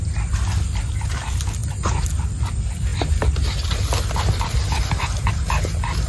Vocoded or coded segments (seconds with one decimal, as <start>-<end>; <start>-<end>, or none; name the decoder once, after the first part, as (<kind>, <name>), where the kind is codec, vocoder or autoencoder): none